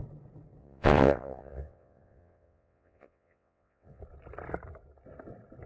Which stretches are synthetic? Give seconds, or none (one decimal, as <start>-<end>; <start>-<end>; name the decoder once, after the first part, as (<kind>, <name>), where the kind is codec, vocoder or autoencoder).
0.6-4.0 (vocoder, WaveNeXt)